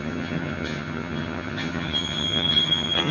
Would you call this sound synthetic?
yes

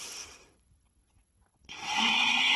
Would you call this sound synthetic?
yes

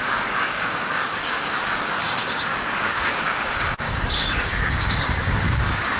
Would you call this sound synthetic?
yes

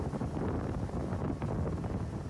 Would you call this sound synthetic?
no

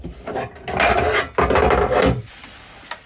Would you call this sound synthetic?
no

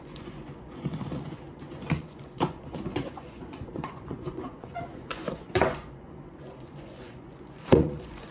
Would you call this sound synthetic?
yes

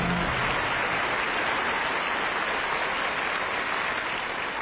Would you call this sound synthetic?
no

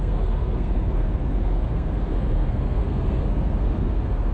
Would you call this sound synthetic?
yes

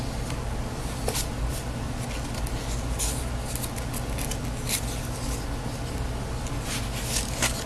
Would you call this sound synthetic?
no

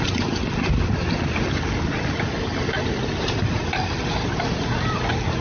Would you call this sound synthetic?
no